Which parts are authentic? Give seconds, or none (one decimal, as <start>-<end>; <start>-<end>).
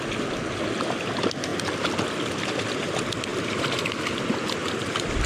0.0-1.5; 2.0-3.3; 4.0-4.6